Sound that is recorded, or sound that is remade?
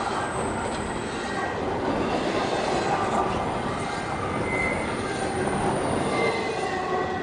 recorded